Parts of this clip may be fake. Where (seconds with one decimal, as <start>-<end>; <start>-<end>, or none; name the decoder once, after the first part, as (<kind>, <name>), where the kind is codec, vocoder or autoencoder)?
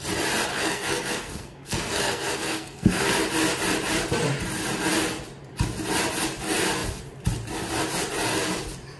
0.5-3.1 (codec, SNAC)